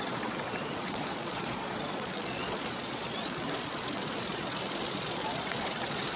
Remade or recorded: remade